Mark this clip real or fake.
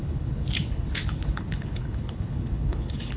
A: fake